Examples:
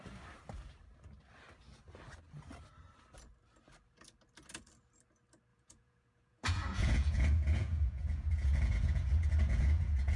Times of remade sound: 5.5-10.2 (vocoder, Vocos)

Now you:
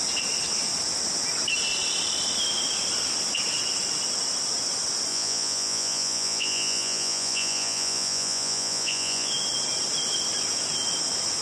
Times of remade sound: 5.1-9.3 (vocoder, Vocos)

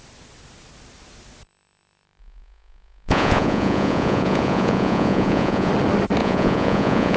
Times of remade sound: 2.2-5.7 (vocoder, Vocos); 6.2-7.2

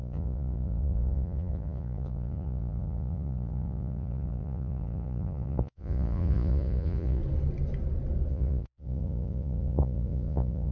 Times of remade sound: 0.0-7.2 (vocoder, Vocos); 8.3-10.7

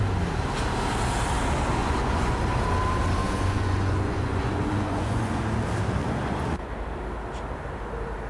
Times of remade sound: 1.8-2.4 (vocoder, Vocos); 3.2-5.4; 6.0-6.7

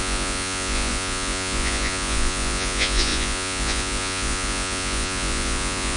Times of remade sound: 0.0-6.0 (vocoder, Vocos)

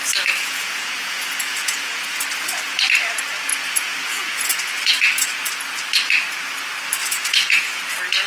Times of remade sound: 0.4-2.2 (vocoder, Vocos); 3.5-5.5; 7.0-7.8

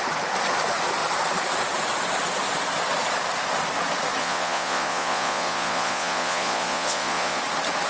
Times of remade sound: 4.2-7.4 (vocoder, Vocos)